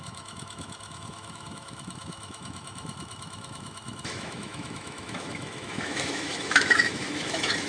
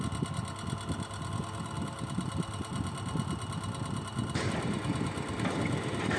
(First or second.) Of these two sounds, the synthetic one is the first